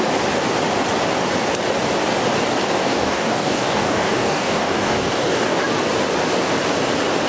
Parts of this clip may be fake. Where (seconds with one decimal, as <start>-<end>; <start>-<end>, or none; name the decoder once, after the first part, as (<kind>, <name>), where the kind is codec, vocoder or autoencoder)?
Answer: 2.8-5.6 (codec, DAC)